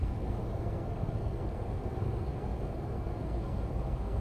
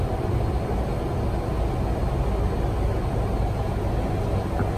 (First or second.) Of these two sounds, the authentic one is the second